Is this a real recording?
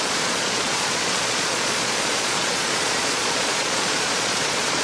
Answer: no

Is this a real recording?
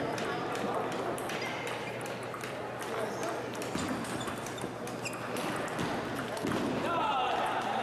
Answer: yes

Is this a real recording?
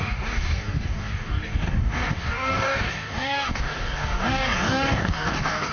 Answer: no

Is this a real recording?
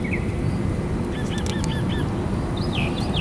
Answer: yes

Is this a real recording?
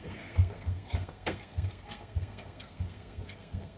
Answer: no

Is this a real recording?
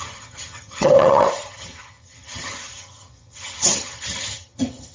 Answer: no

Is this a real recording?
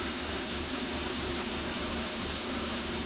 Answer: no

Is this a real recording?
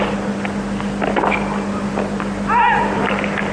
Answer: yes